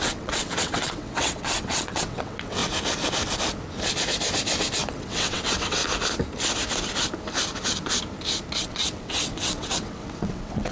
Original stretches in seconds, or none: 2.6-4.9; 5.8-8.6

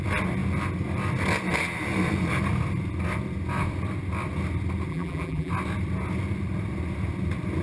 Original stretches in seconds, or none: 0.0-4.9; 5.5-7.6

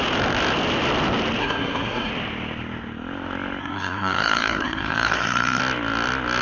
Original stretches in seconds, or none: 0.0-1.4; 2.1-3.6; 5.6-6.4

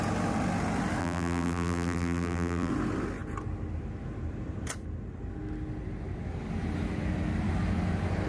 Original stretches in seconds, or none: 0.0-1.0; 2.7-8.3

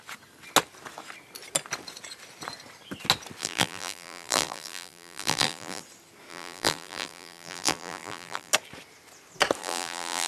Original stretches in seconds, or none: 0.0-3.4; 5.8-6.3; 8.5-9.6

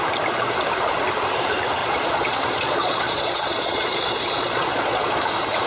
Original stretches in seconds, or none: 0.0-1.8; 5.2-5.7